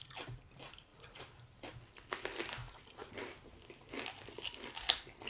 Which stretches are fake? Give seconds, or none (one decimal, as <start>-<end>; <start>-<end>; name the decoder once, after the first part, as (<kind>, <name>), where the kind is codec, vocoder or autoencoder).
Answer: 0.9-1.8 (vocoder, BigVGAN v2); 2.6-3.5

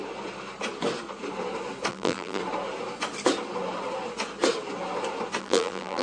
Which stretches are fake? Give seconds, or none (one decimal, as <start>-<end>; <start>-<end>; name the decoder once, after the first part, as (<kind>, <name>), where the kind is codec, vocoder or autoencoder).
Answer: 1.9-2.4 (vocoder, BigVGAN v2); 5.4-6.0

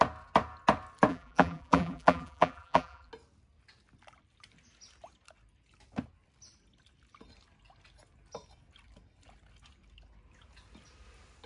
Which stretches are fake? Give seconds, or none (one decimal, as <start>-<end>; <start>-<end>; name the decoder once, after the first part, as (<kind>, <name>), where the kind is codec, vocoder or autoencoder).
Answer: 1.1-3.1 (vocoder, BigVGAN v2)

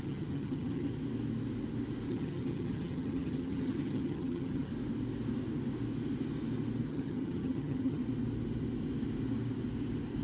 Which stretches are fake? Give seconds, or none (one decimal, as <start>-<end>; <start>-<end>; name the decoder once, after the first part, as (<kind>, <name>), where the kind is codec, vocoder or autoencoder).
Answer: 0.0-0.9 (vocoder, HiFi-GAN); 2.1-4.7; 6.9-8.0

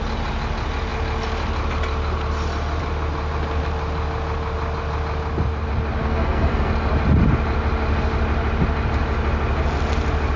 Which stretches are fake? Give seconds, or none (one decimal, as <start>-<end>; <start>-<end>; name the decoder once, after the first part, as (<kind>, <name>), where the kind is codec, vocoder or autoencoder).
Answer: 6.0-6.7 (codec, SNAC)

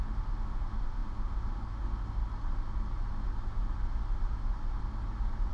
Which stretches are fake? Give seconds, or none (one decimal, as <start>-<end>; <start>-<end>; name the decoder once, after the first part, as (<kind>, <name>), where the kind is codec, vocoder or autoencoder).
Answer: 0.0-2.2 (autoencoder, DAC-VAE)

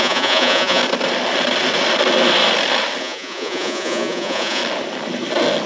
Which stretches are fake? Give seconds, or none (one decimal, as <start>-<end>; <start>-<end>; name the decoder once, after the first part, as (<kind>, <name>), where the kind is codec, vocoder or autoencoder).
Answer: 0.0-0.8 (vocoder, Vocos); 3.0-4.6